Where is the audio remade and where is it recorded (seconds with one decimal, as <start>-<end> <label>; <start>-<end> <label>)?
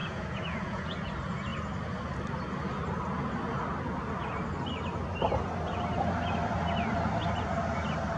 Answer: 0.0-1.1 remade; 1.1-8.2 recorded